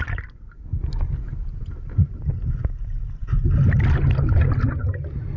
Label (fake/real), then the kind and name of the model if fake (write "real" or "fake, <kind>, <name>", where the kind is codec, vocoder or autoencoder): real